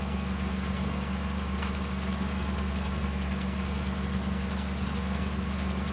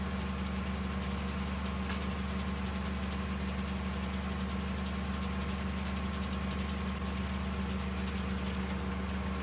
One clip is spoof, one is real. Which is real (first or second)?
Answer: second